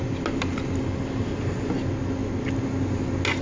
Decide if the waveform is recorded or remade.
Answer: recorded